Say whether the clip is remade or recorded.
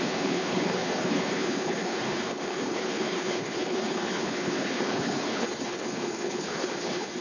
remade